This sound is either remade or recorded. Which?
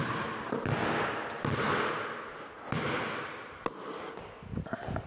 recorded